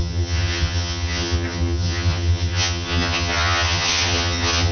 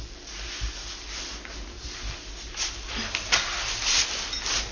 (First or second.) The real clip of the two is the second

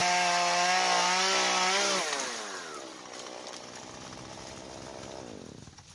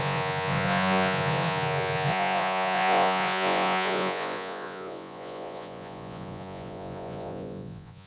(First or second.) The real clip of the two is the first